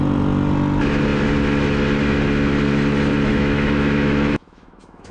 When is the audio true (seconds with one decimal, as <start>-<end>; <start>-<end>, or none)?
0.0-3.3